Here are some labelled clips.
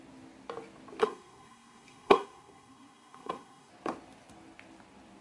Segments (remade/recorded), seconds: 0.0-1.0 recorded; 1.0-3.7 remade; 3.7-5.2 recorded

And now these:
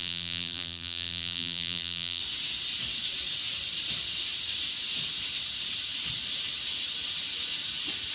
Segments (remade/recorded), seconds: 0.0-2.2 remade; 2.2-8.1 recorded

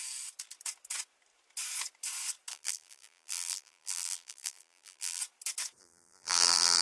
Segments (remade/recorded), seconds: 0.0-2.5 recorded; 2.5-5.2 remade; 5.2-5.8 recorded; 5.8-6.8 remade

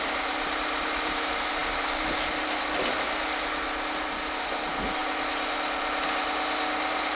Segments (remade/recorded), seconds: 0.0-7.1 recorded

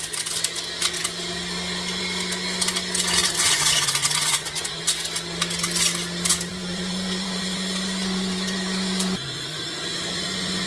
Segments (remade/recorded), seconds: 0.0-3.2 recorded; 3.2-4.8 remade; 4.8-6.5 recorded; 6.5-10.7 remade